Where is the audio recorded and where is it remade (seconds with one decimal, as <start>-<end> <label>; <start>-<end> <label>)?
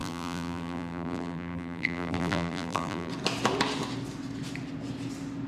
0.0-3.1 remade; 3.1-5.5 recorded